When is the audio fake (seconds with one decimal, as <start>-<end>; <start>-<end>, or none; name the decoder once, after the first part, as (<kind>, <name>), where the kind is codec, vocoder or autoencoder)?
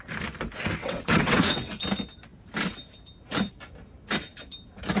0.8-1.7 (vocoder, WaveNeXt)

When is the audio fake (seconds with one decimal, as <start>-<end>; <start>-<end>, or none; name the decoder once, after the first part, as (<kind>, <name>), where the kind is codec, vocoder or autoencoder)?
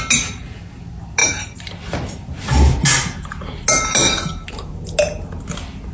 none